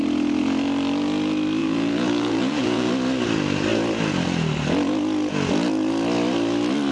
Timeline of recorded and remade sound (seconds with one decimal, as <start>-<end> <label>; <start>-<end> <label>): 0.0-1.6 recorded; 1.6-2.9 remade; 2.9-6.9 recorded